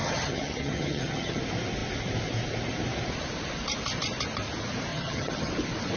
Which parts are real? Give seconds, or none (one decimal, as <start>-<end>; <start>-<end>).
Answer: 1.4-4.9; 5.5-6.0